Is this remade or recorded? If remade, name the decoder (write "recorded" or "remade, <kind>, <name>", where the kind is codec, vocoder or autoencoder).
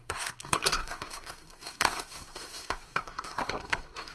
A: remade, codec, SNAC